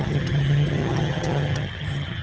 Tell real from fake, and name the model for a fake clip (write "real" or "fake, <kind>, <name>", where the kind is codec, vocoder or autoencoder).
fake, vocoder, HiFi-GAN